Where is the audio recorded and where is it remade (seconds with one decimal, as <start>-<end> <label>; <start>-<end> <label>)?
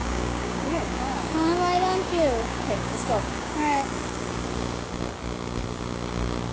0.0-3.9 remade; 3.9-6.5 recorded